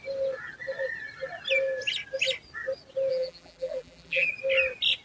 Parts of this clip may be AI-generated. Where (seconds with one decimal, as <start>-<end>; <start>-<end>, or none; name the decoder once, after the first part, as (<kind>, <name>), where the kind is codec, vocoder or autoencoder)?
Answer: 3.1-4.3 (vocoder, BigVGAN v2)